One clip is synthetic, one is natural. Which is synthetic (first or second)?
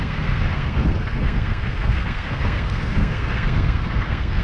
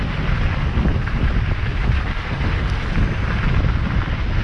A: first